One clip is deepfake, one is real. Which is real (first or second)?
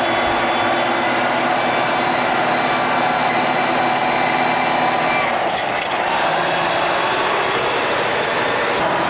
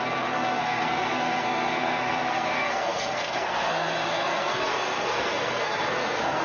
first